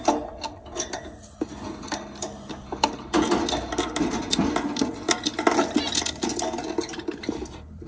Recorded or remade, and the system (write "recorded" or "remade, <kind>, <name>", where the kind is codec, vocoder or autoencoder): recorded